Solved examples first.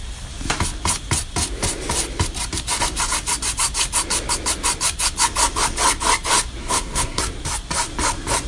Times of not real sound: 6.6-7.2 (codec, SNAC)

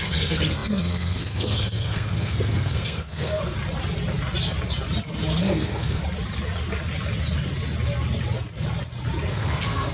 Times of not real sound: 0.0-3.4 (codec, SNAC); 5.4-6.0; 9.3-9.9

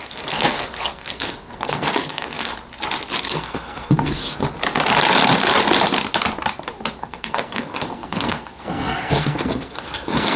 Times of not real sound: 0.0-2.5 (codec, SNAC); 3.2-4.4; 7.0-10.4

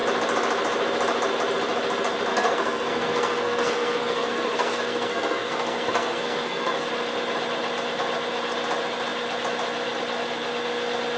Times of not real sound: 2.3-6.9 (codec, SNAC)

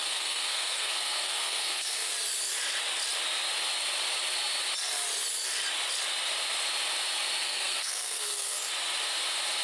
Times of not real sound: 0.0-2.1 (codec, SNAC); 7.4-8.7

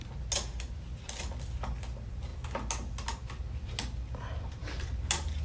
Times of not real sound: none

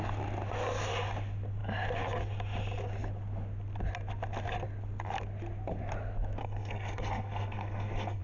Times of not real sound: 6.4-8.2 (codec, SNAC)

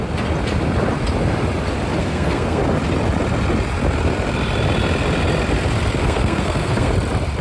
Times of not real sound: 2.0-2.6 (codec, SNAC); 6.0-6.9